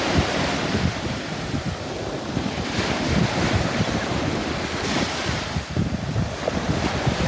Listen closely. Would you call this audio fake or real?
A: fake